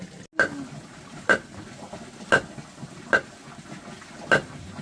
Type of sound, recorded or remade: recorded